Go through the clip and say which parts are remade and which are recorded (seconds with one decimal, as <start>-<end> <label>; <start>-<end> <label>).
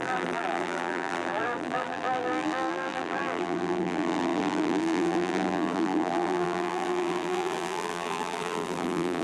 0.0-9.2 remade